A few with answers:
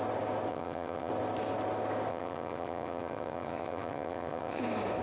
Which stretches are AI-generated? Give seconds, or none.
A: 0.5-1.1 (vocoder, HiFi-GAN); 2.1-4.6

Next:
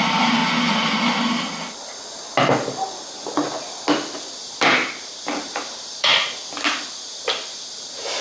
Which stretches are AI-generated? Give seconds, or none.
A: 0.0-0.4 (vocoder, BigVGAN v2); 4.4-6.1

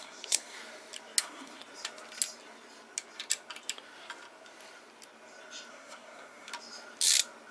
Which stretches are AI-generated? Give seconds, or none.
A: 0.0-0.6 (codec, SNAC); 1.2-1.6; 5.7-6.5

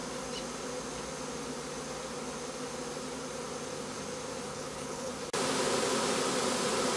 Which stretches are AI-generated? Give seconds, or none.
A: 4.5-5.1 (codec, HILCodec)

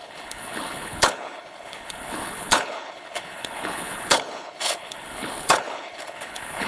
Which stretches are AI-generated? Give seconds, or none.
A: 0.0-6.7 (codec, HILCodec)

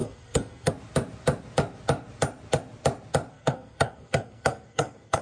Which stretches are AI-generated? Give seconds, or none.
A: 0.0-0.7 (codec, SNAC); 3.3-5.2